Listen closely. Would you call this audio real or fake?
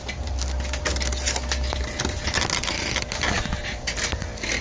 real